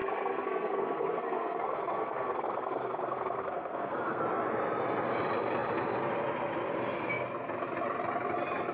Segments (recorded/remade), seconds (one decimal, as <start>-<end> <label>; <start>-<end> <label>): 0.0-4.2 remade; 4.2-8.7 recorded